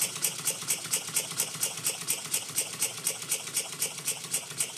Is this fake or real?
fake